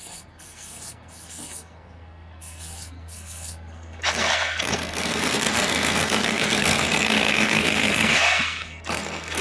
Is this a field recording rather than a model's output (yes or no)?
no